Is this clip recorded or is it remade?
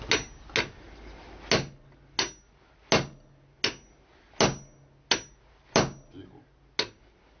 recorded